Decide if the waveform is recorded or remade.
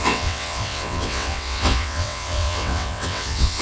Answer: remade